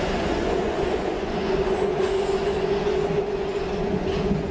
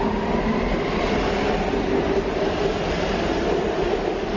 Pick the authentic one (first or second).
second